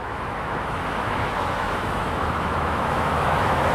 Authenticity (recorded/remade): remade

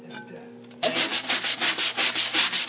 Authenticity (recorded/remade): recorded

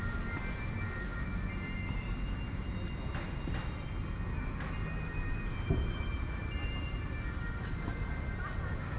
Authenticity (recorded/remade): recorded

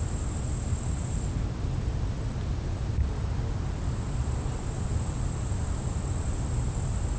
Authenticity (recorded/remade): recorded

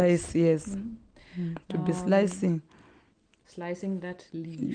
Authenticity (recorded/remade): recorded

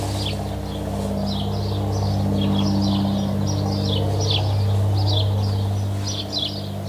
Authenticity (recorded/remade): recorded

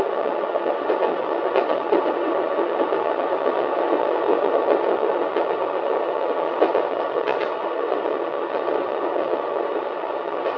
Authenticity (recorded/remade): remade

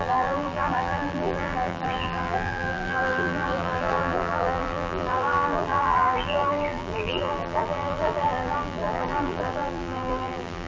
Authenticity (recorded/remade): remade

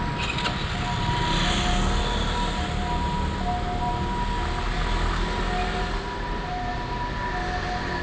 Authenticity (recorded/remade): recorded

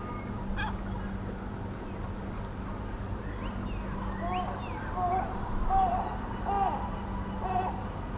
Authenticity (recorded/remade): recorded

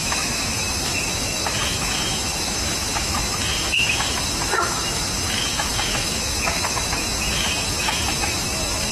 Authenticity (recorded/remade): remade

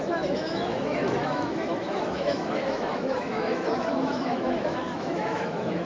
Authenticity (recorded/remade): remade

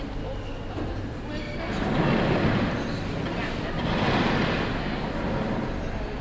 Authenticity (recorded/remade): recorded